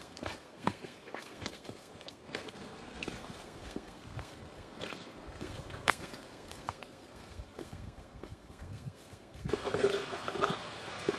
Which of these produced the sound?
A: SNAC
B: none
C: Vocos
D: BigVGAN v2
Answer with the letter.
A